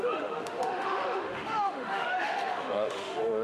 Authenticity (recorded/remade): remade